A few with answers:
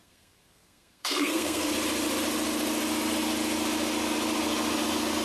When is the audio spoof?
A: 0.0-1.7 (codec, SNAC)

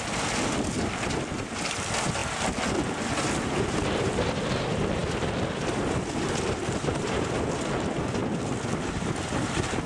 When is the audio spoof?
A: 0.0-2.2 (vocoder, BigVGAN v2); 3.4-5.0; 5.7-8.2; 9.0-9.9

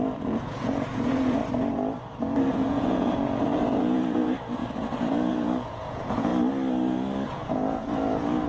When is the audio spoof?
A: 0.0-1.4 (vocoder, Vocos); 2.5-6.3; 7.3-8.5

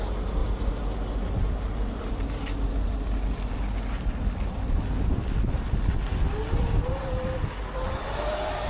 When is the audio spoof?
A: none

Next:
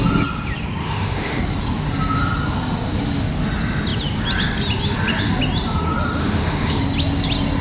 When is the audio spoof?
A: 0.8-1.4 (autoencoder, DAC-VAE); 6.2-6.8